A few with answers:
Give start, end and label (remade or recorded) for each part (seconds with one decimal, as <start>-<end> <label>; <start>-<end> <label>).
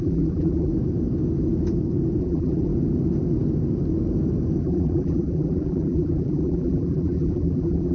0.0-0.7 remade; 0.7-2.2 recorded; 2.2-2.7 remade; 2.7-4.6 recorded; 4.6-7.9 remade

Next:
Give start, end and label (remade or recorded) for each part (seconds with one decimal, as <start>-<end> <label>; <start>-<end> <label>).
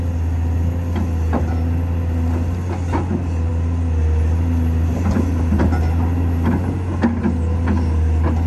0.0-8.5 recorded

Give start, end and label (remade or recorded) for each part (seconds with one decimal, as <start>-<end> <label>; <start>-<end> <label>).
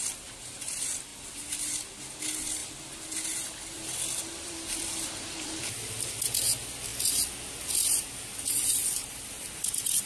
0.0-2.6 recorded; 2.6-6.1 remade; 6.1-8.8 recorded; 8.8-9.3 remade; 9.3-10.1 recorded